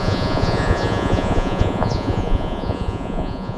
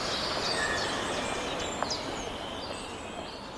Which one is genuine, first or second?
second